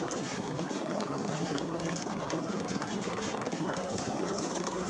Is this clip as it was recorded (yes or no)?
no